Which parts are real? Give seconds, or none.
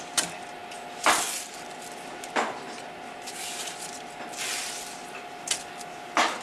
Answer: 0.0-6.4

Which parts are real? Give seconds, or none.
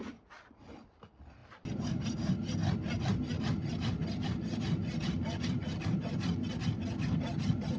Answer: 0.0-7.8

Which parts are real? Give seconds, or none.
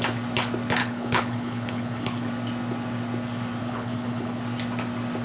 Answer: 0.0-0.8; 2.3-3.6; 4.4-5.2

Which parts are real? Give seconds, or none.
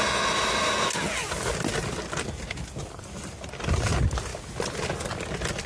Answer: 0.0-5.7